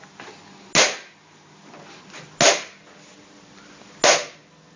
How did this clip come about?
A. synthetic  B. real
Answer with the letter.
B